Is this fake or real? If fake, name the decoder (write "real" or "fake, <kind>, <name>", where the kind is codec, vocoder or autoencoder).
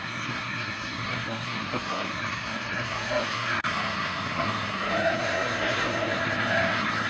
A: fake, codec, SNAC